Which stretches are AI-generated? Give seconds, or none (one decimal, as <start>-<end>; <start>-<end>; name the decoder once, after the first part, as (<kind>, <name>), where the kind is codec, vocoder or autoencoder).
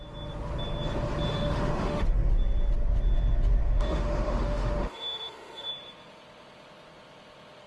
1.3-2.3 (autoencoder, DAC-VAE); 3.6-5.7